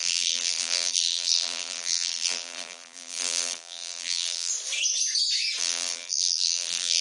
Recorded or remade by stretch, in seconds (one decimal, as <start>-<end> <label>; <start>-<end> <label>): 0.0-4.5 remade; 4.5-5.6 recorded; 5.6-7.0 remade